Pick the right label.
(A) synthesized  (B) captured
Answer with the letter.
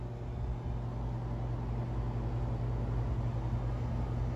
B